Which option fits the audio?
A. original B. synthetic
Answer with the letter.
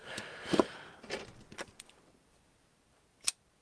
A